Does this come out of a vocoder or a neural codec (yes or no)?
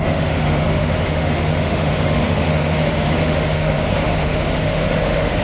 yes